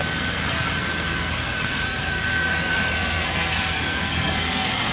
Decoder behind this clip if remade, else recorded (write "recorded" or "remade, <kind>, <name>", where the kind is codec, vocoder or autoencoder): remade, codec, SNAC